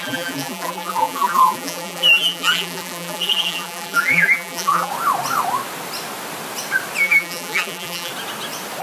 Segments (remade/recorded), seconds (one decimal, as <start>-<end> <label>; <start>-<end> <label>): 0.0-4.9 remade; 4.9-7.0 recorded; 7.0-8.1 remade; 8.1-8.8 recorded